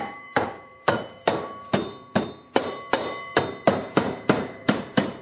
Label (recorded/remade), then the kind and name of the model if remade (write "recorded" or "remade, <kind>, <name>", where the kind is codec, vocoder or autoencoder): remade, vocoder, BigVGAN v2